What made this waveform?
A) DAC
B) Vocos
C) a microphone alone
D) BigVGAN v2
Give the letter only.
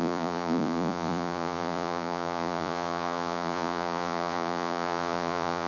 B